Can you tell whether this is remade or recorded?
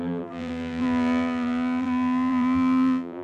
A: remade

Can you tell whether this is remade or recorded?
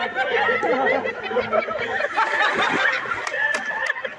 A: recorded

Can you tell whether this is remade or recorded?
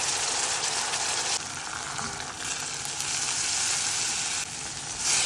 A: recorded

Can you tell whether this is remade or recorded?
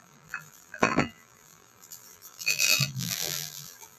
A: remade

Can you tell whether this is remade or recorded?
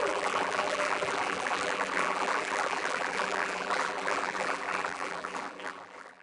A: remade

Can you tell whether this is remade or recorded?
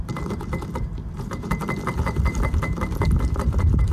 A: remade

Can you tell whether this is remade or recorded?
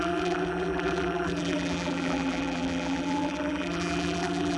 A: remade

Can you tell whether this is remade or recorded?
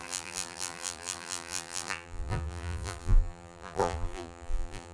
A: remade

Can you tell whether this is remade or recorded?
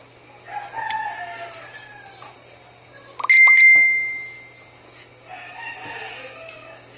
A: recorded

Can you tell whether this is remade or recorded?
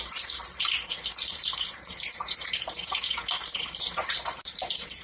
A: remade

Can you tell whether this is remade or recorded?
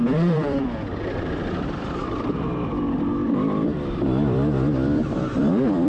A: remade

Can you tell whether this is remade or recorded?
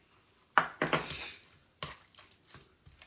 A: recorded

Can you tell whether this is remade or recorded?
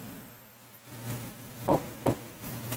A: recorded